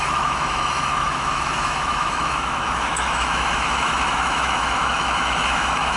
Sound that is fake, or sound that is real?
fake